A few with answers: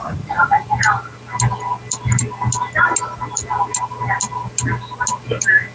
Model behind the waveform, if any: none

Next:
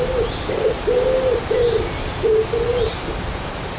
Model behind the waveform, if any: none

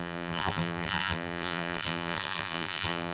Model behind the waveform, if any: vocoder, BigVGAN v2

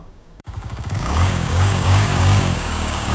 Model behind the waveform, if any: codec, DAC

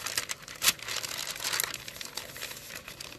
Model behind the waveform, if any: none